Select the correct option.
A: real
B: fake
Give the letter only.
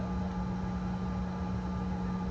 A